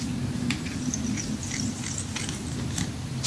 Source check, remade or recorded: recorded